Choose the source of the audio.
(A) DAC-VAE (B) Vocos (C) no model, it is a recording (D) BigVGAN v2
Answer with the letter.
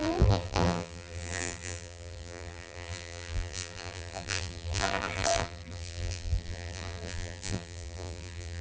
D